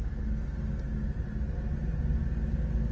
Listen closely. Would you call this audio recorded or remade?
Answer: recorded